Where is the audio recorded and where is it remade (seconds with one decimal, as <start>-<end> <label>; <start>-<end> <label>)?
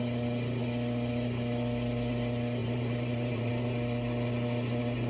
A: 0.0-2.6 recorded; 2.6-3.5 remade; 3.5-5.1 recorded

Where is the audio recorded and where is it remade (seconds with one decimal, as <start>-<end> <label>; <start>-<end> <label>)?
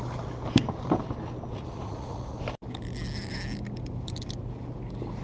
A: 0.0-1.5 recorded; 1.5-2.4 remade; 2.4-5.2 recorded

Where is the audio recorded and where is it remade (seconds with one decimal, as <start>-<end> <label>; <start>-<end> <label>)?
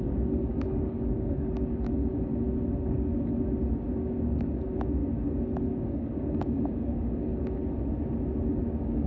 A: 0.0-2.3 remade; 2.3-3.9 recorded; 3.9-5.0 remade; 5.0-5.8 recorded; 5.8-7.6 remade; 7.6-8.6 recorded; 8.6-9.1 remade